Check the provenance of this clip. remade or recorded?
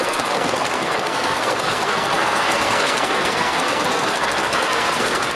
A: remade